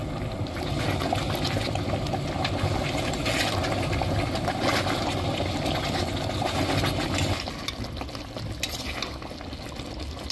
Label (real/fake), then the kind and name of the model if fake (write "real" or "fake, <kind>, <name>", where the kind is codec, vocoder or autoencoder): real